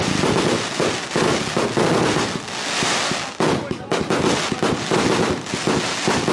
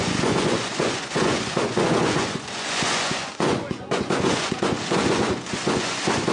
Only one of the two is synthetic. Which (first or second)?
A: second